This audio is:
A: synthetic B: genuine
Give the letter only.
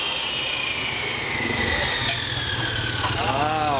B